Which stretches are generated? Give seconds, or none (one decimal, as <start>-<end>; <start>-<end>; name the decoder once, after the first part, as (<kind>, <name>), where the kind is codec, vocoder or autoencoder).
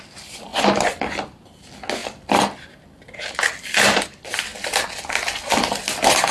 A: none